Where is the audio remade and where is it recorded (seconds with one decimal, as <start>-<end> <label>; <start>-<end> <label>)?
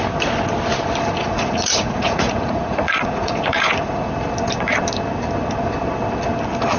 0.0-1.2 recorded; 1.2-4.1 remade; 4.1-6.8 recorded